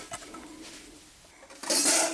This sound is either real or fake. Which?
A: real